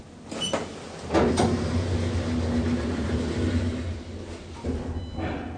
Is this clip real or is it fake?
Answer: real